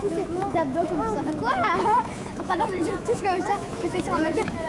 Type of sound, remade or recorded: remade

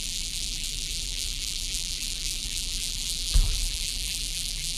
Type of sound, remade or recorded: remade